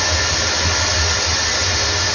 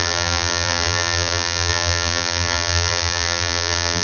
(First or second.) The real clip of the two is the first